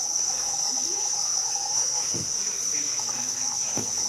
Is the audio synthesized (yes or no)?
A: yes